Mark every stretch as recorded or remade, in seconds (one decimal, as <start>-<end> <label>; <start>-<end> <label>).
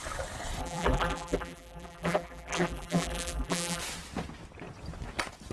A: 0.0-0.6 recorded; 0.6-3.8 remade; 3.8-5.5 recorded